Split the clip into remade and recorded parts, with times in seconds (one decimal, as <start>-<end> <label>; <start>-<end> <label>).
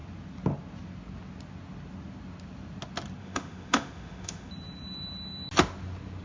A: 0.0-3.2 recorded; 3.2-4.5 remade; 4.5-6.2 recorded